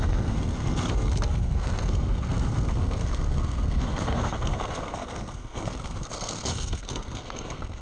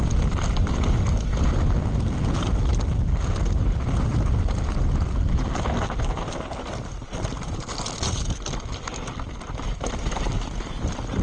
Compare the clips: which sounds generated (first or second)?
first